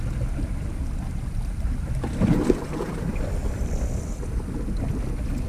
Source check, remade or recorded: recorded